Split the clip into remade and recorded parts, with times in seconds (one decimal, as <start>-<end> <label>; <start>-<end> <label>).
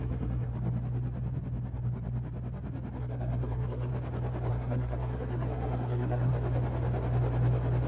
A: 0.0-0.5 remade; 0.5-3.0 recorded; 3.0-3.9 remade; 3.9-4.5 recorded; 4.5-6.3 remade; 6.3-7.9 recorded